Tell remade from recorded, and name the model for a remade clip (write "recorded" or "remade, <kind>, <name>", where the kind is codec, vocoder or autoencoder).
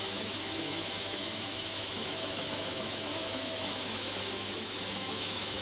remade, autoencoder, DAC-VAE